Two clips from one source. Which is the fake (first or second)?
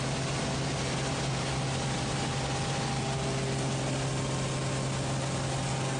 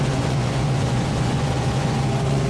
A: second